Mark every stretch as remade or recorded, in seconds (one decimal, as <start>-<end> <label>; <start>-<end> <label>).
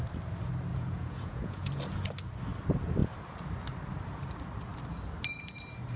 0.0-0.7 recorded; 0.7-1.7 remade; 1.7-6.0 recorded